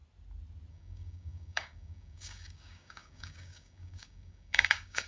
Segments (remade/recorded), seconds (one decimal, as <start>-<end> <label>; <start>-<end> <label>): 0.0-0.7 recorded; 0.7-5.1 remade